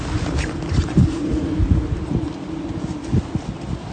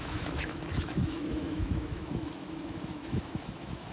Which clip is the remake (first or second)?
second